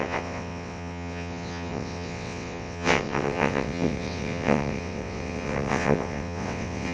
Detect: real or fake fake